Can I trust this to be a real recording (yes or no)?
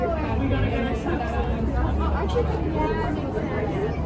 yes